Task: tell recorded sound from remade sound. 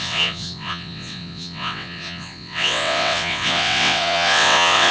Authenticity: remade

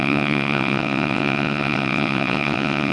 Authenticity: remade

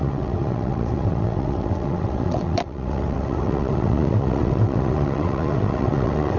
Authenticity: remade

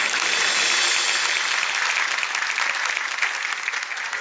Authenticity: recorded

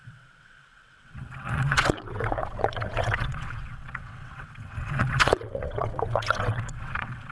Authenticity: remade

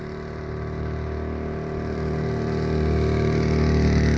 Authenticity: recorded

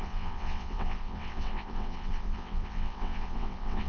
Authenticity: remade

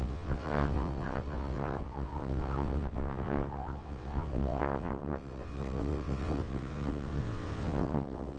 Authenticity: remade